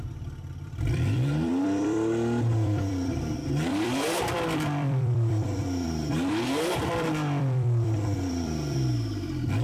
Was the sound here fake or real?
fake